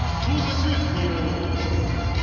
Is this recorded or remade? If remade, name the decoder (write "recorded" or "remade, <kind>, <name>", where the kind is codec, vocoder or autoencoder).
recorded